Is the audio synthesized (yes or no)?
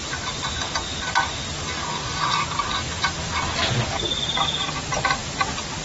yes